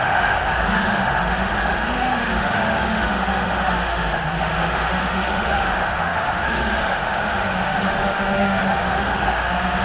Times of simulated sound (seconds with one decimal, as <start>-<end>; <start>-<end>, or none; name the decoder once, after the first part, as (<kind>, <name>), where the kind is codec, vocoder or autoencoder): 0.0-9.8 (autoencoder, DAC-VAE)